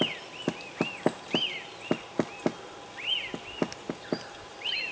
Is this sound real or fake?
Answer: real